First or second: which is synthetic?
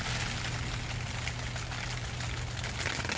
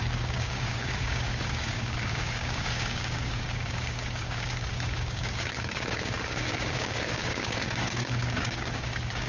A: second